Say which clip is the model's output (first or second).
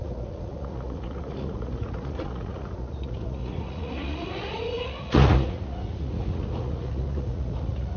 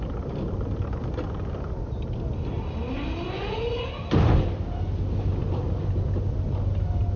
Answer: first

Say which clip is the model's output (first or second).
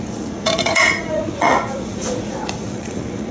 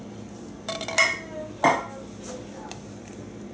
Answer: first